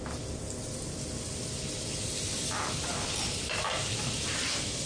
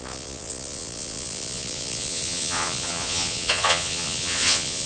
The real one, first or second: first